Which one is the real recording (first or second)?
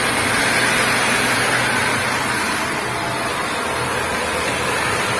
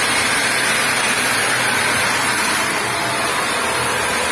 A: first